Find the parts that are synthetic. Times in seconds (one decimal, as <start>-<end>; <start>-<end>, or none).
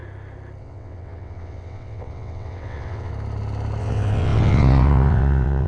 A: 0.6-3.1; 3.8-5.7